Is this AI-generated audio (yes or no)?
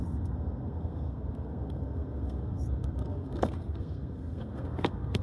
yes